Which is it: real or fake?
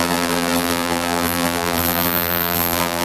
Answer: fake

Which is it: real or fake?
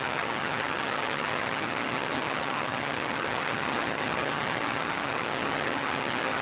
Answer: fake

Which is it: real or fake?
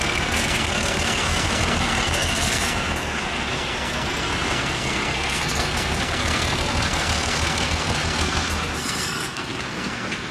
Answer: fake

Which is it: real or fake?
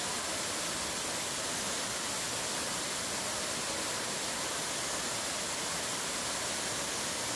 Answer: real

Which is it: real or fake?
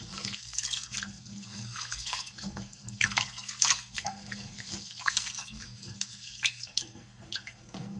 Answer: fake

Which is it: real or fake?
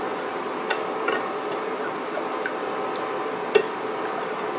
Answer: real